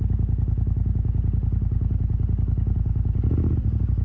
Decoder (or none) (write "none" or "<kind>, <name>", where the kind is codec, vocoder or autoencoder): none